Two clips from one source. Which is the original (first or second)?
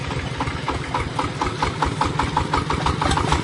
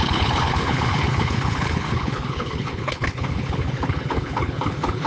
first